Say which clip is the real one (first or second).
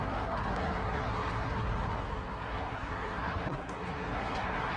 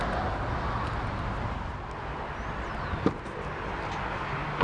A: second